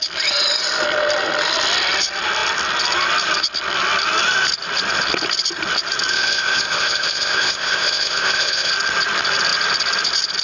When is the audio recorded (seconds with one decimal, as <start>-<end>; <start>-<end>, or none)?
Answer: 0.0-6.1; 8.7-10.4